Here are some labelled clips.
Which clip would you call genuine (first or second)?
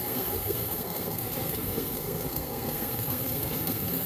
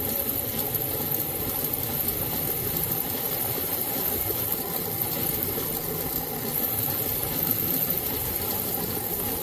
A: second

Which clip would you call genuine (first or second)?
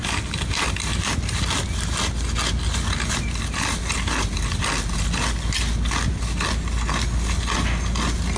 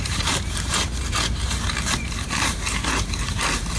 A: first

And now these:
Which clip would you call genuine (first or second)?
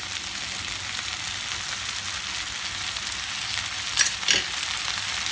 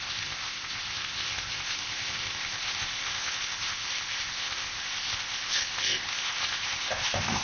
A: first